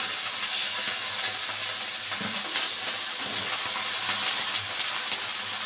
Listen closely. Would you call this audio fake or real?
real